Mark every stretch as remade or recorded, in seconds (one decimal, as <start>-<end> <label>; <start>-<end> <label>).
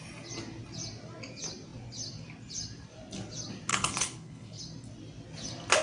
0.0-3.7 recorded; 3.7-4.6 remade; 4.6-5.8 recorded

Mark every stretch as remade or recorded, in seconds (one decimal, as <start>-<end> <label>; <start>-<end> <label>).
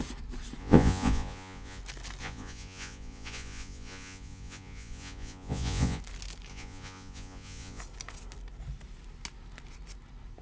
0.0-0.6 recorded; 0.6-1.8 remade; 1.8-2.2 recorded; 2.2-6.0 remade; 6.0-6.5 recorded; 6.5-7.8 remade; 7.8-10.4 recorded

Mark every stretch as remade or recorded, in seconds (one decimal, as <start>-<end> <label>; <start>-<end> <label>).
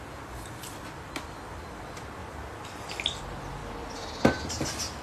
0.0-5.0 recorded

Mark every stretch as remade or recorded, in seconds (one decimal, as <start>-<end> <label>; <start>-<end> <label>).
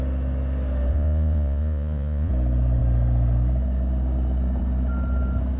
0.0-0.9 recorded; 0.9-2.3 remade; 2.3-5.6 recorded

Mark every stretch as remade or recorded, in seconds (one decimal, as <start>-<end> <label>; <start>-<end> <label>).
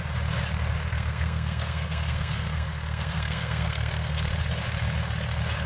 0.0-0.9 recorded; 0.9-4.3 remade; 4.3-5.7 recorded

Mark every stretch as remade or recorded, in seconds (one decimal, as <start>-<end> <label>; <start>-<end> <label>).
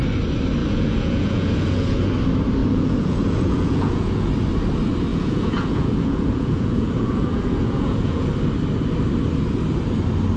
0.0-0.6 recorded; 0.6-2.1 remade; 2.1-2.6 recorded; 2.6-4.3 remade; 4.3-5.1 recorded; 5.1-8.3 remade; 8.3-10.4 recorded